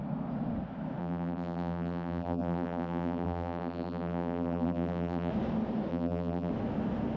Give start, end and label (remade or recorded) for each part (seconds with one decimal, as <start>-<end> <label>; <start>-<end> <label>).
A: 0.0-1.0 recorded; 1.0-5.3 remade; 5.3-5.9 recorded; 5.9-6.5 remade; 6.5-7.2 recorded